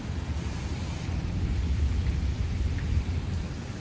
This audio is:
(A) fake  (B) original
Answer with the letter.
B